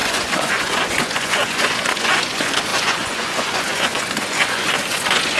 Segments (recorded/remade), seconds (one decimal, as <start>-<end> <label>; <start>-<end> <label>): 0.0-5.4 remade